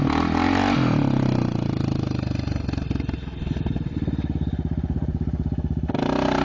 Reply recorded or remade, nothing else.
recorded